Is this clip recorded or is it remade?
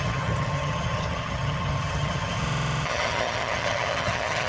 remade